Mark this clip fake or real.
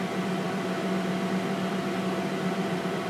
fake